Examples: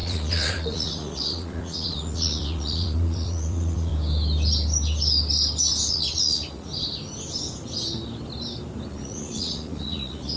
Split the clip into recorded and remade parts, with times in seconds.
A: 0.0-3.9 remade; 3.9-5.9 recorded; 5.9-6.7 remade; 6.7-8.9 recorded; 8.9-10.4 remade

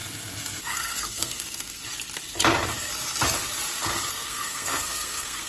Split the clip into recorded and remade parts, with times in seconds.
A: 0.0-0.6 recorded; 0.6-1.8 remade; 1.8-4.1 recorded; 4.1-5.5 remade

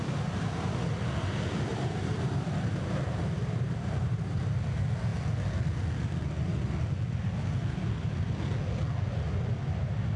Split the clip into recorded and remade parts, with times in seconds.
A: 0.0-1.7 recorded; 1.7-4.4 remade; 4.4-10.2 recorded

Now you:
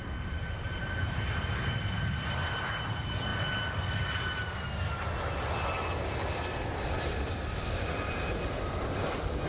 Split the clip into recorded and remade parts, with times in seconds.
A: 0.0-9.5 recorded

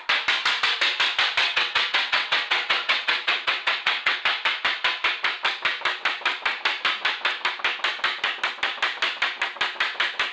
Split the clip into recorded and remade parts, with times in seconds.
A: 0.0-1.4 recorded; 1.4-4.2 remade; 4.2-10.3 recorded

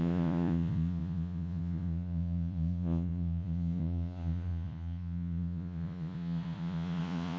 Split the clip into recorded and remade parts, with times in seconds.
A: 0.0-7.4 remade

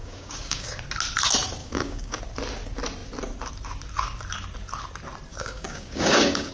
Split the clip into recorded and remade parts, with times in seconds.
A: 0.0-0.7 remade; 0.7-1.6 recorded; 1.6-2.2 remade; 2.2-5.3 recorded; 5.3-6.5 remade

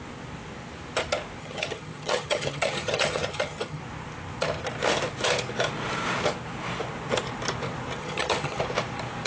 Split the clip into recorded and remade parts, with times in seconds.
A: 0.0-1.4 recorded; 1.4-3.8 remade; 3.8-8.0 recorded; 8.0-8.6 remade; 8.6-9.3 recorded